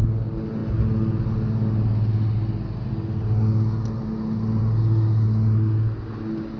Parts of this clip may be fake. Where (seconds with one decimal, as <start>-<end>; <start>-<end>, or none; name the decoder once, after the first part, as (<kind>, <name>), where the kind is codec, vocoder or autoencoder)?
none